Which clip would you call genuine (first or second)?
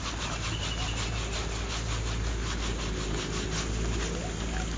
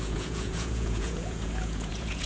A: first